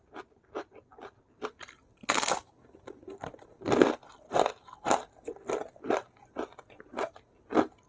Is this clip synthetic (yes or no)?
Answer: no